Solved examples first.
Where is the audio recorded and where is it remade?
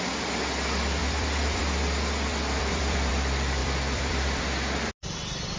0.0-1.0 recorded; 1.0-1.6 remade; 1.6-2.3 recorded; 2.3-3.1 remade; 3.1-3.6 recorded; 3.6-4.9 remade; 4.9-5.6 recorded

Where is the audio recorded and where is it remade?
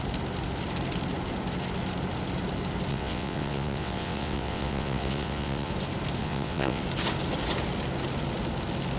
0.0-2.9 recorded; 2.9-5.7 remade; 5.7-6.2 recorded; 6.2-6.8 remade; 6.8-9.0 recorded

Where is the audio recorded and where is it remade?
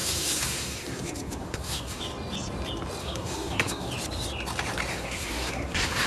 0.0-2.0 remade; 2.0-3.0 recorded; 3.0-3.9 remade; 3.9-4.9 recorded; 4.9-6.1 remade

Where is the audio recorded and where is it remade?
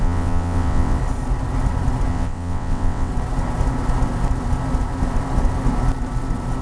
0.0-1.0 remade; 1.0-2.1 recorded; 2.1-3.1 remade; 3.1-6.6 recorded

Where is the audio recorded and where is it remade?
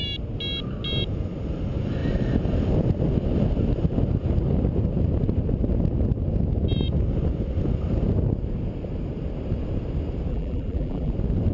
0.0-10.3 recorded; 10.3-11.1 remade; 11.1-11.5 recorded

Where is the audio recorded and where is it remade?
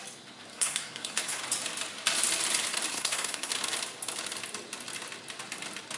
0.0-0.5 recorded; 0.5-1.4 remade; 1.4-2.9 recorded; 2.9-3.5 remade; 3.5-6.0 recorded